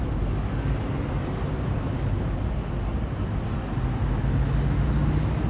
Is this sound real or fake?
real